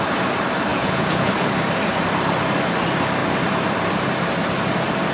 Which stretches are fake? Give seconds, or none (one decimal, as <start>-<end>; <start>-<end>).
0.7-1.3